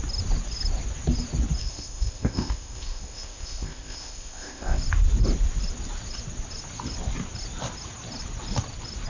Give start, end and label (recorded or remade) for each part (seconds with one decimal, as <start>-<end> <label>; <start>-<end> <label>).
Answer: 0.0-1.6 recorded; 1.6-4.8 remade; 4.8-9.1 recorded